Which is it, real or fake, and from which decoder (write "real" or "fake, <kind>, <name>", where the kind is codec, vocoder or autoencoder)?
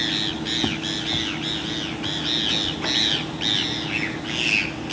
real